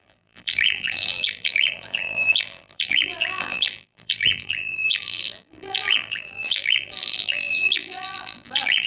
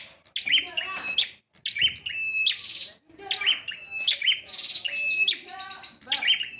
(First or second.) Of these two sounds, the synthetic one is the first